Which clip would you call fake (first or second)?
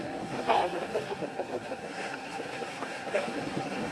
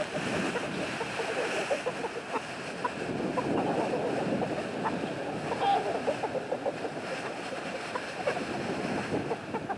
first